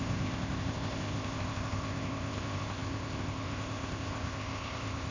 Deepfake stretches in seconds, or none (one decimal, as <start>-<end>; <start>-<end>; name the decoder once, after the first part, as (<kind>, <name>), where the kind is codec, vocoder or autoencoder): 0.0-5.1 (codec, ZipCodec)